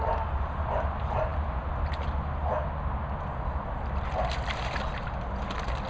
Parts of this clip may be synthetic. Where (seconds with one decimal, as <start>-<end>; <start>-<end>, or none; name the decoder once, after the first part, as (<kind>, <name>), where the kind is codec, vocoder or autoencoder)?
none